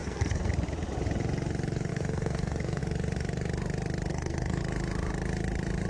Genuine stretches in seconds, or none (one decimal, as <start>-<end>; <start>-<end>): 0.5-1.9; 2.8-4.1; 4.6-5.9